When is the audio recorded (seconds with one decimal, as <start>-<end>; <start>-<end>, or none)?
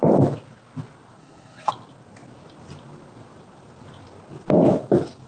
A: 0.0-1.2; 1.7-5.3